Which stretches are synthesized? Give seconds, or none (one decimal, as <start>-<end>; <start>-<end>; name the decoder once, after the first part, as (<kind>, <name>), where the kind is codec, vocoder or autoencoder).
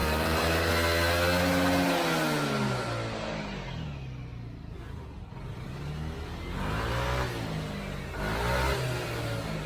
0.0-0.7 (vocoder, BigVGAN v2)